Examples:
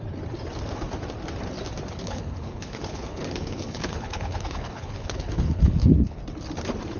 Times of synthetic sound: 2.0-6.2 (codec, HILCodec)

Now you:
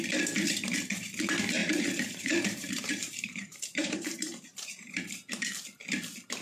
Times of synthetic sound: 1.6-5.0 (vocoder, BigVGAN v2)